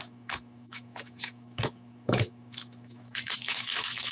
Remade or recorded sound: remade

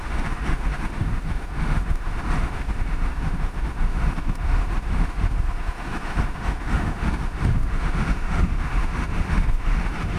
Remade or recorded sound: remade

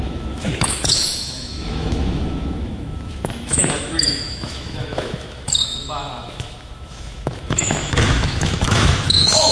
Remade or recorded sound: remade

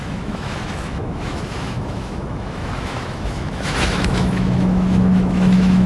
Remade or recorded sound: remade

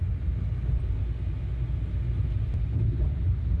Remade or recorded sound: recorded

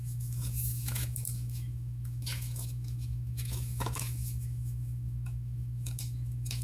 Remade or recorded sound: remade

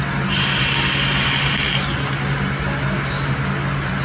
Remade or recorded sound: recorded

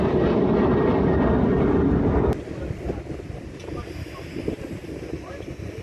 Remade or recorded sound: recorded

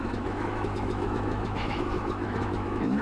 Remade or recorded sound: remade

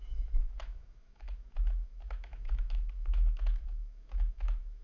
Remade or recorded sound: remade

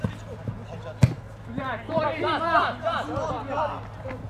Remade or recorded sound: recorded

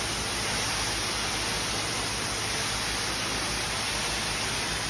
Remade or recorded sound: recorded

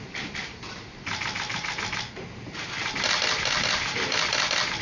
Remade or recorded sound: recorded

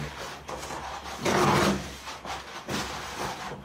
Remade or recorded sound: recorded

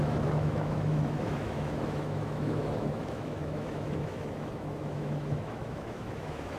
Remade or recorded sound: remade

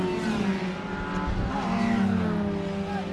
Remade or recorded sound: recorded